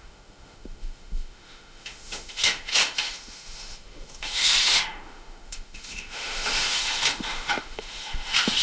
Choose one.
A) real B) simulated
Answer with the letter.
B